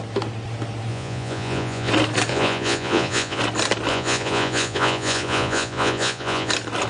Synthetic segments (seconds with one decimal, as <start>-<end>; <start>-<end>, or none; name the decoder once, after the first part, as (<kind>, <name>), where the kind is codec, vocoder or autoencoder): 0.9-1.9 (vocoder, Vocos); 2.3-3.4; 3.9-6.5